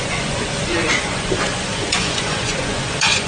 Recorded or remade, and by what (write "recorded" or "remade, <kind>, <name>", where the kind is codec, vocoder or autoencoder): remade, vocoder, Vocos